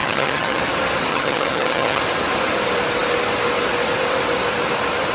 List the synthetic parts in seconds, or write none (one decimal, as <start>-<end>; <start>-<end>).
0.0-0.6; 1.1-2.0